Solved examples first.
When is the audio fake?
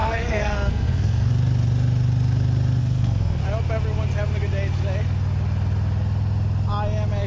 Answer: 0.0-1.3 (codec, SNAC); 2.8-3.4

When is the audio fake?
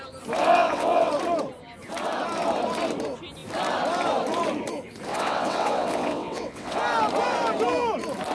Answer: 0.4-1.1 (vocoder, WaveNeXt); 5.1-6.8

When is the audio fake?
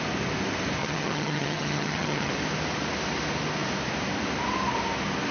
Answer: 0.8-2.3 (vocoder, HiFi-GAN)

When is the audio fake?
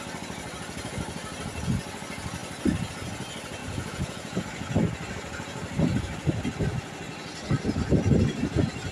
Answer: 3.6-4.4 (vocoder, Vocos)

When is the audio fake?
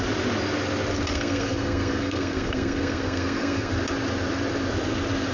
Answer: 1.1-3.7 (codec, SNAC)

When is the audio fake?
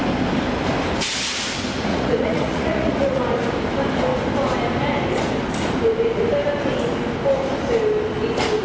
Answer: 1.9-3.2 (vocoder, Vocos)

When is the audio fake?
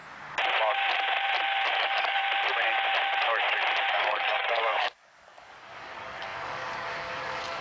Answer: 1.8-2.2 (codec, DAC); 3.9-7.6